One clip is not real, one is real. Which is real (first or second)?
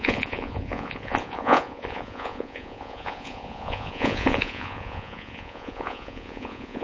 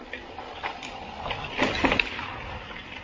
second